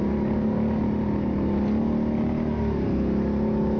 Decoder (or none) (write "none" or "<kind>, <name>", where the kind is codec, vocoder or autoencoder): none